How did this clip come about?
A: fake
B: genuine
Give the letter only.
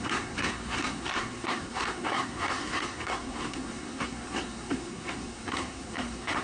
A